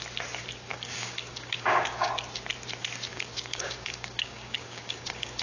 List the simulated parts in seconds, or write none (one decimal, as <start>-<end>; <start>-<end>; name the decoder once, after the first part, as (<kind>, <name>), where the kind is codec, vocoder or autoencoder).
0.7-2.1 (codec, DAC); 3.1-5.4